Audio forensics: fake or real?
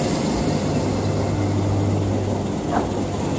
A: real